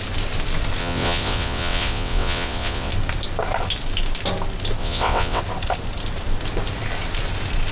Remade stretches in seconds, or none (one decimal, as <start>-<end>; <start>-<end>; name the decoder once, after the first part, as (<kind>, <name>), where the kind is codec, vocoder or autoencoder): 0.8-2.9 (vocoder, WaveNeXt); 4.8-5.4